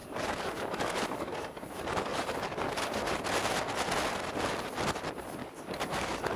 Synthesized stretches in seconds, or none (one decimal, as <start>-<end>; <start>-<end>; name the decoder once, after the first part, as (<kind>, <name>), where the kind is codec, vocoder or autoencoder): 0.0-3.2 (codec, DAC); 5.4-6.4